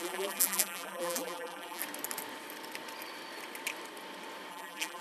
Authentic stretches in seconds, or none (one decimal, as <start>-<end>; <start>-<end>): 1.8-4.5